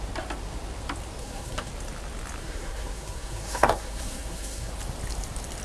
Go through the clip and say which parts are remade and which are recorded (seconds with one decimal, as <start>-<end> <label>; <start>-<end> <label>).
0.0-1.2 recorded; 1.2-1.7 remade; 1.7-2.4 recorded; 2.4-4.7 remade; 4.7-5.6 recorded